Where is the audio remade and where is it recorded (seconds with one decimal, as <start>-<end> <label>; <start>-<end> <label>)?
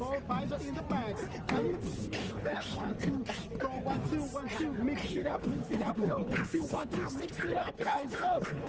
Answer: 0.0-1.7 recorded; 1.7-3.1 remade; 3.1-5.0 recorded; 5.0-8.7 remade